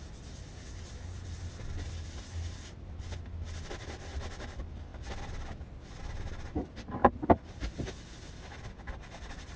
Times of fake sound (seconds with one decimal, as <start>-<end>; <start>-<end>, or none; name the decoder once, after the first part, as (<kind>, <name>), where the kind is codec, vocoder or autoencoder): none